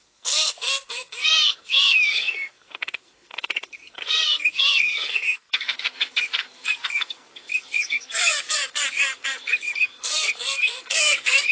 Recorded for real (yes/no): no